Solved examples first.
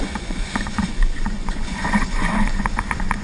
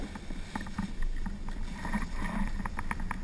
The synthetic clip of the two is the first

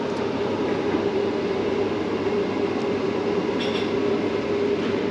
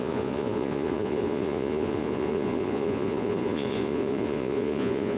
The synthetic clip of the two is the second